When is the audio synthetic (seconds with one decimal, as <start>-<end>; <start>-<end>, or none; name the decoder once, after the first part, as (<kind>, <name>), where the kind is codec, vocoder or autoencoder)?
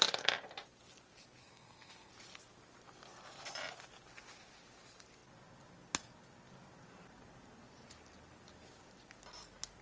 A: 1.4-2.1 (codec, SNAC)